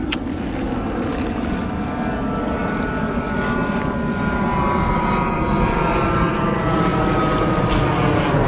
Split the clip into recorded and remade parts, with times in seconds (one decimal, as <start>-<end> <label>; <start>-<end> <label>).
0.0-8.5 recorded